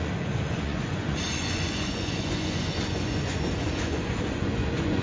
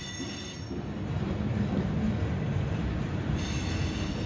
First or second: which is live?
second